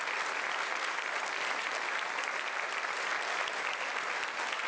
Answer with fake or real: real